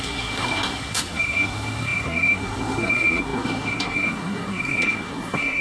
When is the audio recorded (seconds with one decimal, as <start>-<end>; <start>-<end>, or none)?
none

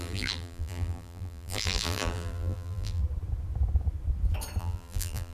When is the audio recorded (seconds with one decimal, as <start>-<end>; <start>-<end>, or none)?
3.0-4.6

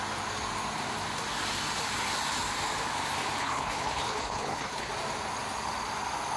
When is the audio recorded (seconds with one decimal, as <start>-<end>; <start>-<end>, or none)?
0.0-3.4; 4.9-6.4

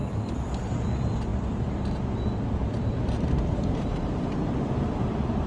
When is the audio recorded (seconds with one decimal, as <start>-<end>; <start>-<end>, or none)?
none

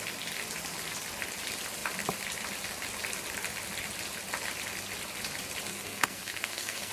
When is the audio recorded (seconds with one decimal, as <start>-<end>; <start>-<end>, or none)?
0.0-5.7